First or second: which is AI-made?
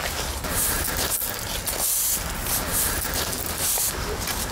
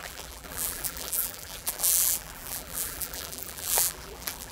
second